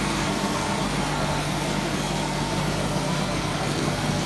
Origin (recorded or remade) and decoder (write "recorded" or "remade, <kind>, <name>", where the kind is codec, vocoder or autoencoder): remade, codec, SNAC